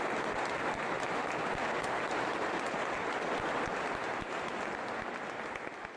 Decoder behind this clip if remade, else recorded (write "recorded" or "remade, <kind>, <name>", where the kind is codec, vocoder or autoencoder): recorded